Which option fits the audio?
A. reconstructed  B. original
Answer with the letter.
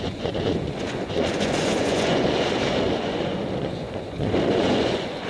A